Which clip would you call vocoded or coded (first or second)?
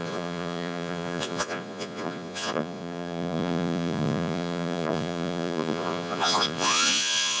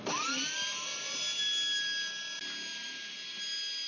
first